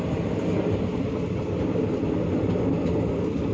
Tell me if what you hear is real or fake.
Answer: real